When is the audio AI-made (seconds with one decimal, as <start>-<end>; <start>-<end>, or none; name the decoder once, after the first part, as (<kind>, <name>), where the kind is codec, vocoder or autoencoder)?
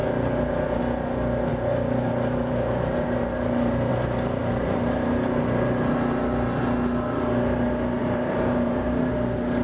0.0-0.8 (vocoder, BigVGAN v2); 1.5-3.9; 4.4-5.1; 8.0-9.1